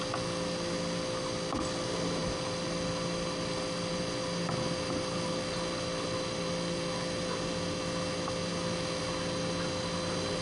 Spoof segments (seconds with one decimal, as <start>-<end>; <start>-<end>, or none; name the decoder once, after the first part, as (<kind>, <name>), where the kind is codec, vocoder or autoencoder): 2.2-7.3 (vocoder, BigVGAN v2)